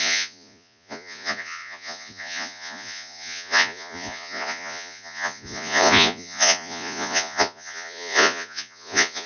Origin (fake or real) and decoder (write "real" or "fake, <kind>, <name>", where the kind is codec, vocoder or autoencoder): fake, vocoder, Vocos